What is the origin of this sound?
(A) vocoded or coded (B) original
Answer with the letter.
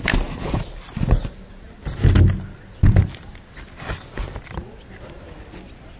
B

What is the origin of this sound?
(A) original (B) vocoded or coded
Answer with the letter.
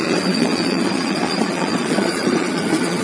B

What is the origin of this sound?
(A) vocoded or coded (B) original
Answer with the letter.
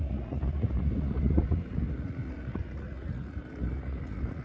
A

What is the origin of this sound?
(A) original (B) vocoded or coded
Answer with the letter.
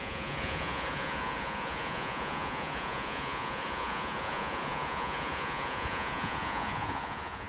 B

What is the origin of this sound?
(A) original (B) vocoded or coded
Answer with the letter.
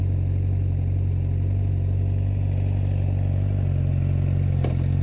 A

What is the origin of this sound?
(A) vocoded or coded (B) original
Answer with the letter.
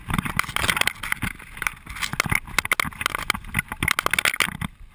B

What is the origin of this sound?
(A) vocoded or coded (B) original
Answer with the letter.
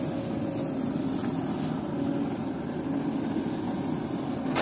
B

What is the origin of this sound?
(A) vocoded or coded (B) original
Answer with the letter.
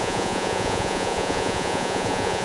A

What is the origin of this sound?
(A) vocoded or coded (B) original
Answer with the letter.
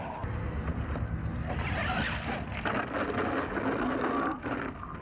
B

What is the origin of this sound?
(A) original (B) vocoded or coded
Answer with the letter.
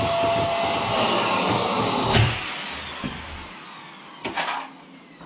A